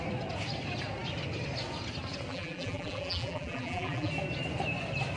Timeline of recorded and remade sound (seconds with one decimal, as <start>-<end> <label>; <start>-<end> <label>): 0.0-2.3 recorded; 2.3-4.1 remade; 4.1-5.2 recorded

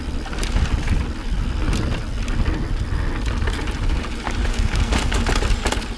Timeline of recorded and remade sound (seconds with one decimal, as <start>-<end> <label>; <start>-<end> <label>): 0.0-4.5 recorded; 4.5-5.2 remade; 5.2-6.0 recorded